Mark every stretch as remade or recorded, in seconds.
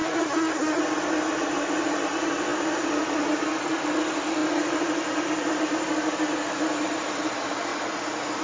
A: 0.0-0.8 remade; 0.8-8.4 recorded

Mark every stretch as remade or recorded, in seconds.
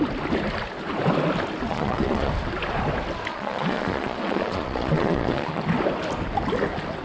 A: 0.0-1.7 recorded; 1.7-2.3 remade; 2.3-3.3 recorded; 3.3-5.6 remade; 5.6-7.0 recorded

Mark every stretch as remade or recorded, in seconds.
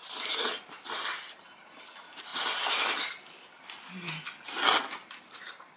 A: 0.0-2.3 remade; 2.3-5.2 recorded; 5.2-5.8 remade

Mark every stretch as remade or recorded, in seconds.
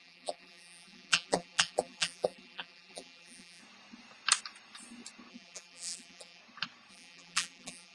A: 0.0-3.6 remade; 3.6-5.3 recorded; 5.3-6.4 remade; 6.4-6.9 recorded; 6.9-7.9 remade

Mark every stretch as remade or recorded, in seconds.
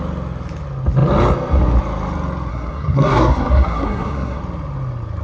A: 0.0-2.5 recorded; 2.5-4.4 remade; 4.4-5.2 recorded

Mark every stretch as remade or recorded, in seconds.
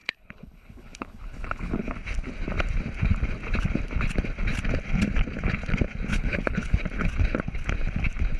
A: 0.0-1.9 remade; 1.9-6.1 recorded; 6.1-6.8 remade; 6.8-8.4 recorded